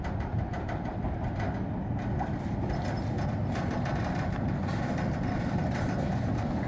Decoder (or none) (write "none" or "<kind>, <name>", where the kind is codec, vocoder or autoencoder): none